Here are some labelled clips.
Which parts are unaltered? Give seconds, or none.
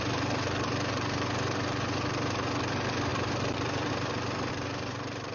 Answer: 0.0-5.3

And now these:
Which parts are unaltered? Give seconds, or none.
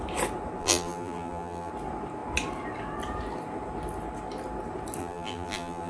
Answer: 0.0-0.6; 1.7-5.0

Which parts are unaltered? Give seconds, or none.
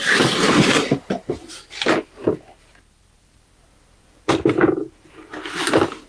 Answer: 0.0-3.2; 4.3-6.1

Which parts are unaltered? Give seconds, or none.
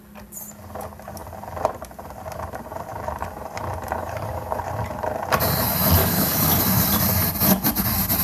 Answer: 0.0-4.0; 4.6-6.0; 6.6-8.2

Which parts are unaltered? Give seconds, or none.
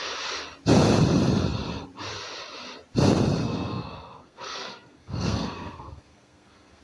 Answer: 0.0-3.4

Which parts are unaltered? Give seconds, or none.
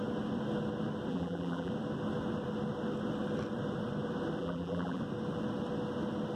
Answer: 0.0-1.1; 1.7-4.4; 5.0-6.4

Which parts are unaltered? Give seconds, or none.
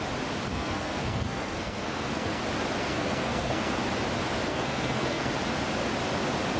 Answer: 0.0-0.5; 2.4-2.8; 3.8-4.5; 5.3-6.6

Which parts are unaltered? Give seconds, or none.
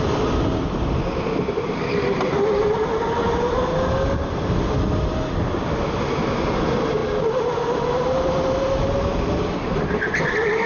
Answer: 0.0-10.7